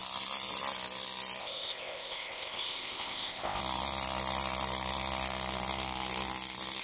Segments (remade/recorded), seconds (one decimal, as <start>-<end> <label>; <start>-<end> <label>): 0.0-1.4 recorded; 1.4-3.6 remade; 3.6-6.8 recorded